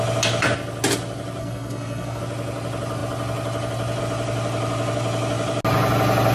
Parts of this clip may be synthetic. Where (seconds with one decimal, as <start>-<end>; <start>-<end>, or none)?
1.4-2.2